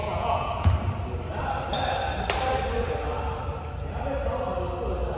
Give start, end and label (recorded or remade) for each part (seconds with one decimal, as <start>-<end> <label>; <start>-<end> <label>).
0.0-0.7 remade; 0.7-5.2 recorded